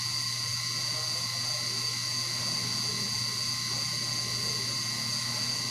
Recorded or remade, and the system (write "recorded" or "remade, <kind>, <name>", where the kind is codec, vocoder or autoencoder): recorded